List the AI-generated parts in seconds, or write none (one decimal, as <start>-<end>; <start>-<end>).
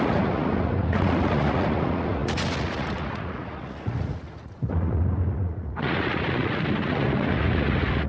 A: 0.0-8.1